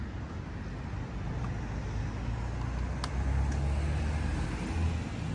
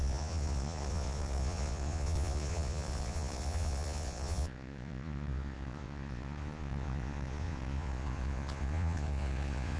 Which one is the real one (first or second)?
first